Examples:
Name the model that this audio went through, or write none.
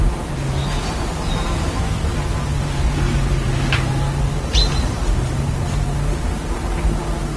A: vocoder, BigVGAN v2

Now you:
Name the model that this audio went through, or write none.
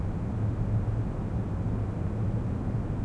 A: none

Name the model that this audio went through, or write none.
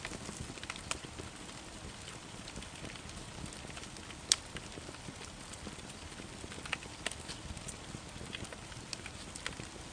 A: none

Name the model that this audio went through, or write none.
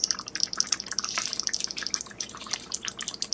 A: none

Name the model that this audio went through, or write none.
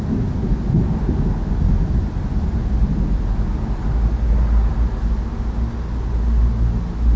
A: none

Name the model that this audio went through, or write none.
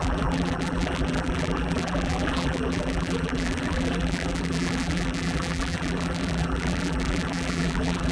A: vocoder, BigVGAN v2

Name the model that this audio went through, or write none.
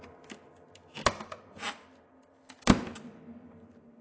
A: vocoder, BigVGAN v2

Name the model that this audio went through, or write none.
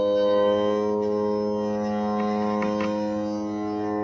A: none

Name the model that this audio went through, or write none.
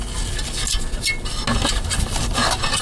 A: none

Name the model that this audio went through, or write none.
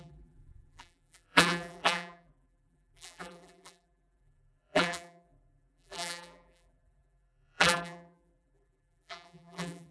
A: vocoder, BigVGAN v2